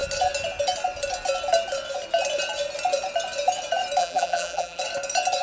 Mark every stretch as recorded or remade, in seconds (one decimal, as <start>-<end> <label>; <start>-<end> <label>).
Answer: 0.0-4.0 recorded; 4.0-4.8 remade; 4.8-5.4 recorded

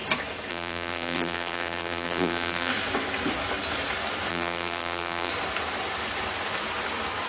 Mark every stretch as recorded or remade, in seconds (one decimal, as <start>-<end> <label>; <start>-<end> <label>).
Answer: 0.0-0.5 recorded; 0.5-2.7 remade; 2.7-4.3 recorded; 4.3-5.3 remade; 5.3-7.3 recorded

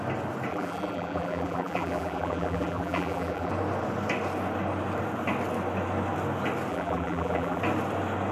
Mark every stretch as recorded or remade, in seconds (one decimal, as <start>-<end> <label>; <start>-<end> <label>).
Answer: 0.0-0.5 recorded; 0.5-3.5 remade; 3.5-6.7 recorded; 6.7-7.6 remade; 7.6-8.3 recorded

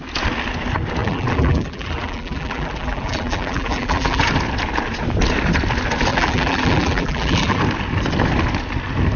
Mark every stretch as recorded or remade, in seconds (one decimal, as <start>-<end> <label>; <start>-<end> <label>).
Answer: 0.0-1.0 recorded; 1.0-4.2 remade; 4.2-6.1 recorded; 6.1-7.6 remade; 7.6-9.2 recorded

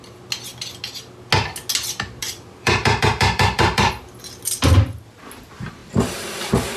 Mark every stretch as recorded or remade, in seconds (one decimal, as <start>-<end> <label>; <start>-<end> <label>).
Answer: 0.0-2.2 recorded; 2.2-3.9 remade; 3.9-6.8 recorded